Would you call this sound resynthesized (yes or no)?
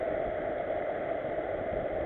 yes